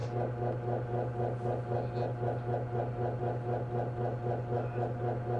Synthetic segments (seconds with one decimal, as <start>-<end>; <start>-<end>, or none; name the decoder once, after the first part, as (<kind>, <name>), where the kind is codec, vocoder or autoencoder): none